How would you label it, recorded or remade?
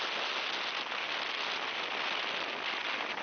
recorded